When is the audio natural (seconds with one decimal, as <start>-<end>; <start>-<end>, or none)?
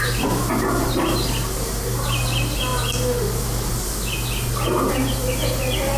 0.0-6.0